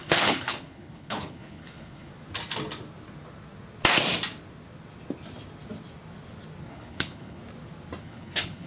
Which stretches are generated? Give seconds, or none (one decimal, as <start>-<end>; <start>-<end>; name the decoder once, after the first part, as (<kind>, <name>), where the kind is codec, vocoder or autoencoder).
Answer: 0.0-2.1 (codec, HILCodec); 6.7-7.4; 8.0-8.7